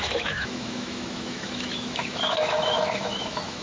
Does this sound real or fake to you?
fake